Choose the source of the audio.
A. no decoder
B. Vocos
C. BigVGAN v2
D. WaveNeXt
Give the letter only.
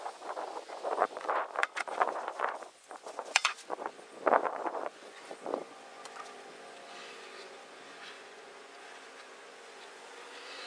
B